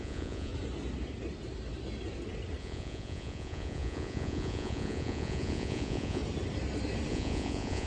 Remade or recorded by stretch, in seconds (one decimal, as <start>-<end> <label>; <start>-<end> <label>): 0.0-0.5 remade; 0.5-2.6 recorded; 2.6-6.2 remade; 6.2-7.1 recorded; 7.1-7.9 remade